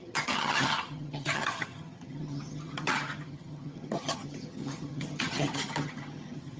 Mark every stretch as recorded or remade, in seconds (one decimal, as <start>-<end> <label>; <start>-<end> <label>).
0.0-6.6 remade